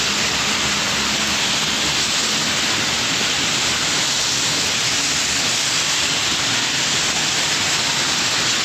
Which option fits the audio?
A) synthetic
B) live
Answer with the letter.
B